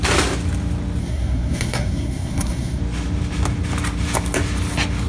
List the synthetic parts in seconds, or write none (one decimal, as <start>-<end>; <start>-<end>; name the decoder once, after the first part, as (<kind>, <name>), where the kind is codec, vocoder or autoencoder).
1.0-2.8 (codec, SNAC)